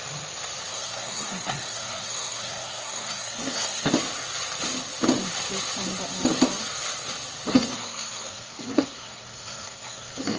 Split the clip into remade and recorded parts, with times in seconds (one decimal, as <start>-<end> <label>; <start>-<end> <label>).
0.0-0.7 recorded; 0.7-3.9 remade; 3.9-7.5 recorded; 7.5-10.4 remade

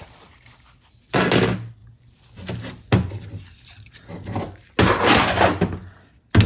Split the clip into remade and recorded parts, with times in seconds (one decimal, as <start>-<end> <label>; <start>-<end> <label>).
0.0-6.5 recorded

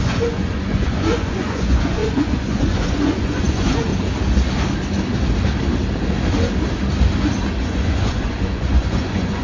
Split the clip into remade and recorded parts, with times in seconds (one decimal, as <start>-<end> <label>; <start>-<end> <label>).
0.0-3.9 remade; 3.9-7.6 recorded; 7.6-9.4 remade

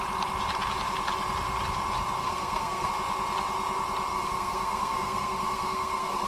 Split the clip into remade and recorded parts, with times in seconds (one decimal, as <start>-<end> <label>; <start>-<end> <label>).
0.0-2.2 recorded; 2.2-2.9 remade; 2.9-4.1 recorded; 4.1-6.3 remade

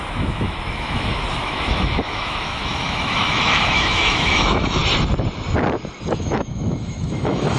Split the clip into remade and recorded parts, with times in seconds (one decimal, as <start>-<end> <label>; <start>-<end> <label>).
0.0-4.8 remade; 4.8-6.1 recorded; 6.1-7.6 remade

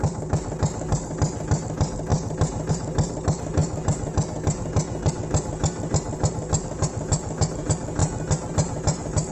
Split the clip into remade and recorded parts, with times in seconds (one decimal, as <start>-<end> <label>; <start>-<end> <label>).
0.0-9.3 recorded

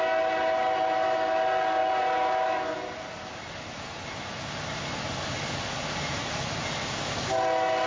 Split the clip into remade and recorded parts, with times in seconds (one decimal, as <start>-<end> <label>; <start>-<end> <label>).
0.0-7.9 recorded

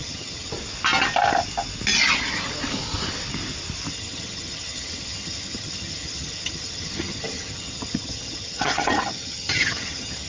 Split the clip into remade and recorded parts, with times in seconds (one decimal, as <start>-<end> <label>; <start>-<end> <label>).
0.0-0.5 remade; 0.5-3.9 recorded; 3.9-10.3 remade